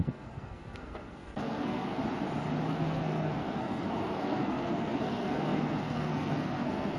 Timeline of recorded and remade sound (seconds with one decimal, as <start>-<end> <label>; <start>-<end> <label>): 0.0-2.0 remade; 2.0-2.7 recorded; 2.7-7.0 remade